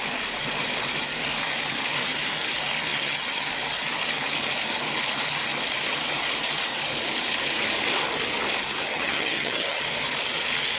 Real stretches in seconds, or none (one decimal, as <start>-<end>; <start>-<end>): 0.0-2.9; 3.5-8.9; 9.8-10.8